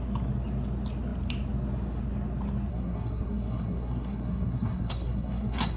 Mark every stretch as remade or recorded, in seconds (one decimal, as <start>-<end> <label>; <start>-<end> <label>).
0.0-2.7 recorded; 2.7-5.8 remade

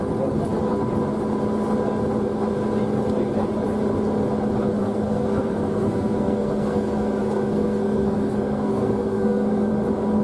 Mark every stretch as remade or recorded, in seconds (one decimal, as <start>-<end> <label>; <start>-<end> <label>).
0.0-4.8 recorded; 4.8-9.7 remade; 9.7-10.2 recorded

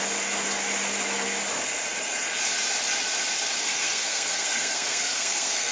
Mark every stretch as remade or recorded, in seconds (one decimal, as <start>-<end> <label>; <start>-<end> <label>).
0.0-3.6 recorded; 3.6-5.7 remade

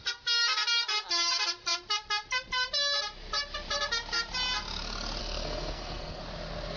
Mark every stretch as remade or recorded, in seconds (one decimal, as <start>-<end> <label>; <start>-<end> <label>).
0.0-5.2 recorded; 5.2-6.2 remade; 6.2-6.8 recorded

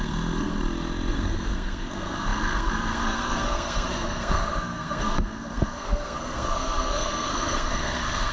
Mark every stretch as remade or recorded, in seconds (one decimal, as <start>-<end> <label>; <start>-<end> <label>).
0.0-0.6 remade; 0.6-1.1 recorded; 1.1-8.3 remade

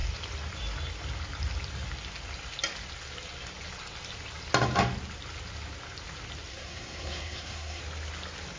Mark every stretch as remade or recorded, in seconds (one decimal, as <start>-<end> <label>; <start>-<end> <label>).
0.0-6.5 recorded; 6.5-7.8 remade; 7.8-8.6 recorded